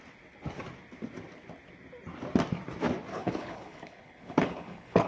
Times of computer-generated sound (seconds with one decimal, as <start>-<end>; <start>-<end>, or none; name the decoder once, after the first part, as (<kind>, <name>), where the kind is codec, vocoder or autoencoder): 3.1-5.1 (codec, HILCodec)